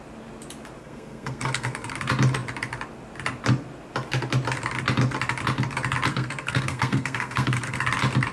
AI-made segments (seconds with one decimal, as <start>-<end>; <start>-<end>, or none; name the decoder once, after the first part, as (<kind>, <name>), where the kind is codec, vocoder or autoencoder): 0.8-1.9 (codec, SNAC); 6.1-7.8